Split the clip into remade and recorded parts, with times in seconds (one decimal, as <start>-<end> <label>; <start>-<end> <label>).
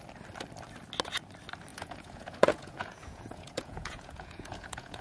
0.0-1.7 recorded; 1.7-5.0 remade